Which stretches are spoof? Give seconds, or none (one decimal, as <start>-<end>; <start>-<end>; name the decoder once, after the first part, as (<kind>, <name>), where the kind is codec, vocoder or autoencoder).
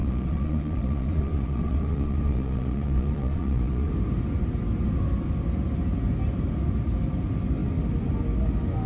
0.0-3.9 (vocoder, Vocos)